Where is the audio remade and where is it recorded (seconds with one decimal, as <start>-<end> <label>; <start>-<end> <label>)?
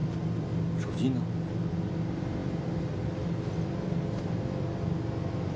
0.0-5.6 recorded